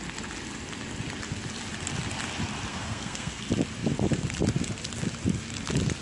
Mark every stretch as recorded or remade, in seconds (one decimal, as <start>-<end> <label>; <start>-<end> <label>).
0.0-2.7 recorded; 2.7-3.4 remade; 3.4-6.0 recorded